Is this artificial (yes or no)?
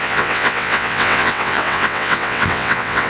yes